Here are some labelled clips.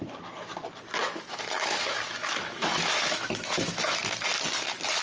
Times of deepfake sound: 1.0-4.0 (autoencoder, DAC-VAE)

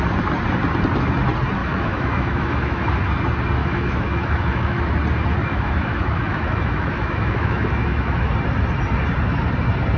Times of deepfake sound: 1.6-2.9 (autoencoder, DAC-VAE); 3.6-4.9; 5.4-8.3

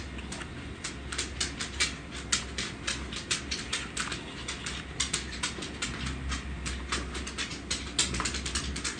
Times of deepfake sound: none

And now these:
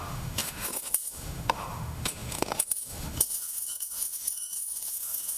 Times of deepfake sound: 0.0-5.4 (autoencoder, DAC-VAE)

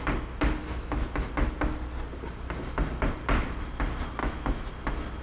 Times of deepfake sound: 0.6-1.3 (autoencoder, DAC-VAE); 4.2-4.7

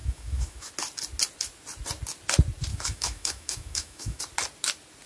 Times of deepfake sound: 0.0-0.7 (autoencoder, DAC-VAE); 2.7-4.2